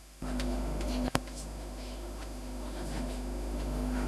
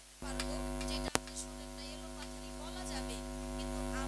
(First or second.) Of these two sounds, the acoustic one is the second